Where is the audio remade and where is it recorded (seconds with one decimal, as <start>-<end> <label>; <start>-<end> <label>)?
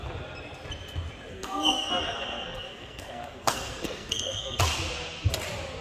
0.0-1.3 recorded; 1.3-4.6 remade; 4.6-5.8 recorded